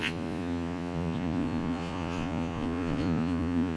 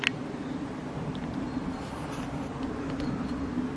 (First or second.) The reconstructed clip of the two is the first